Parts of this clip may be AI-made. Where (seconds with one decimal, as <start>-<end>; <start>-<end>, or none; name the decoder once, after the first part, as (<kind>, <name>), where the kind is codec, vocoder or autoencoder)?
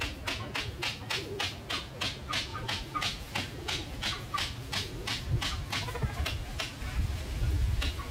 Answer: 2.5-5.7 (vocoder, BigVGAN v2); 6.5-7.5